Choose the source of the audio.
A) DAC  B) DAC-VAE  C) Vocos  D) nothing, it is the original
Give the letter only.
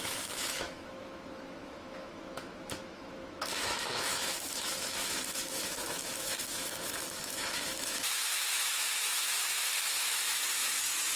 B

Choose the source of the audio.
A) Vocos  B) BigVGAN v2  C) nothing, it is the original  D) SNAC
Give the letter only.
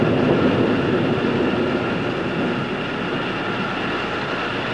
C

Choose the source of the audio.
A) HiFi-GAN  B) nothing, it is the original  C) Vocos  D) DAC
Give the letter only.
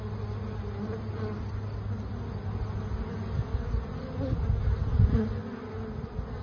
B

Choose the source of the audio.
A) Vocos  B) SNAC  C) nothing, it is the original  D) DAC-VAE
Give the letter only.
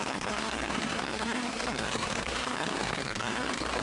B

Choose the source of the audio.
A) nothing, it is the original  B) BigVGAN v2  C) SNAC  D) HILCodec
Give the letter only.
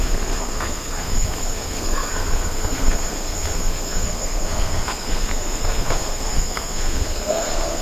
C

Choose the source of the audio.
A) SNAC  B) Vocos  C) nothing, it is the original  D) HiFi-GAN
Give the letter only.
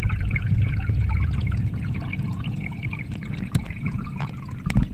B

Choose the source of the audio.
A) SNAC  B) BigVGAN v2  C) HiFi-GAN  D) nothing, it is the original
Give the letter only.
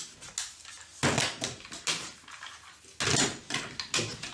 D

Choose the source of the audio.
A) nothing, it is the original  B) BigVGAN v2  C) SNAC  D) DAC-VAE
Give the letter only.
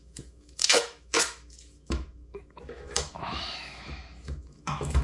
D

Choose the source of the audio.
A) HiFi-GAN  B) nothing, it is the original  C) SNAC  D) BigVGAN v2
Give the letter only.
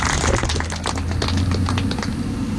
B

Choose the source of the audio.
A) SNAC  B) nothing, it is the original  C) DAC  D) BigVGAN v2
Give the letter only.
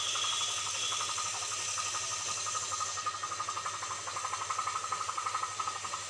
B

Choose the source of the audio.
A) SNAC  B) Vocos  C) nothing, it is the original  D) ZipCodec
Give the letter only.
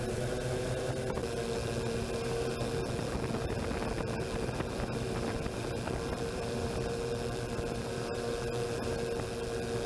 C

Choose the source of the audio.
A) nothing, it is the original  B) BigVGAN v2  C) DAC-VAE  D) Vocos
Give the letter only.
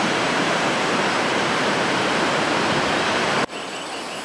B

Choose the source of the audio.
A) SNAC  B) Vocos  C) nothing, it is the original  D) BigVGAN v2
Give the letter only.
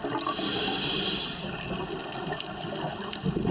C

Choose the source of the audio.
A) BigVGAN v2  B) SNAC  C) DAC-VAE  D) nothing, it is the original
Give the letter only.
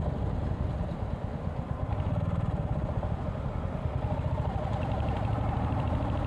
A